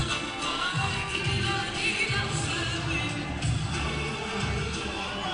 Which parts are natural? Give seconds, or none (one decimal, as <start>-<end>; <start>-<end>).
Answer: 1.2-5.3